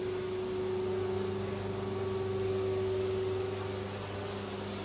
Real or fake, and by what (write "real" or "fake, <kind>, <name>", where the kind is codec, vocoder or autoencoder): real